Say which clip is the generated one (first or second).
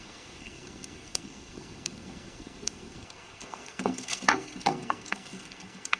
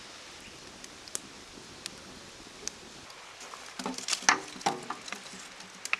first